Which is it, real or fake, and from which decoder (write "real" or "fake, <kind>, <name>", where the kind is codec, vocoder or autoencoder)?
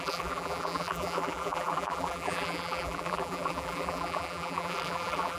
fake, vocoder, BigVGAN v2